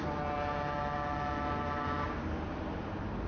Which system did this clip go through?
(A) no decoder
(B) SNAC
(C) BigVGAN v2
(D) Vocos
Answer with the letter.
A